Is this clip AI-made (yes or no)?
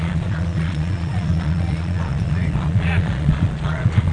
yes